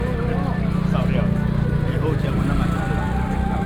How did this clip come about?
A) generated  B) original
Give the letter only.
B